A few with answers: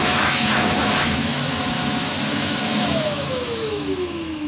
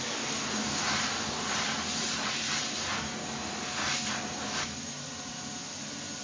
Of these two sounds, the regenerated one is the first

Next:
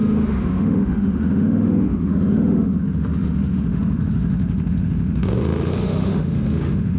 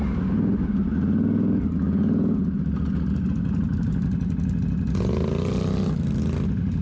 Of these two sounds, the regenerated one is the first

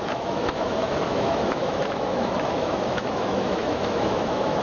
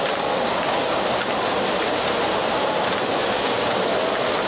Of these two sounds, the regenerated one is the first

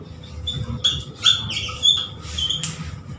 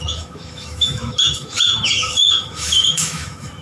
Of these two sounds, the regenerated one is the second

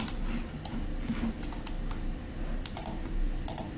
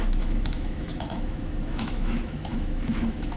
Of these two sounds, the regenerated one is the second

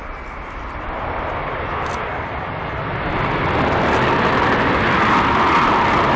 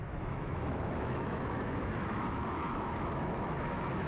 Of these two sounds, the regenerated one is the second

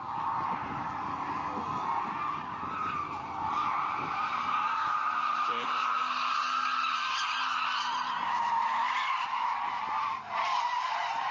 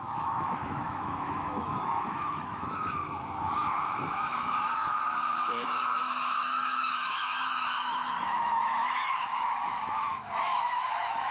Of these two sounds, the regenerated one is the second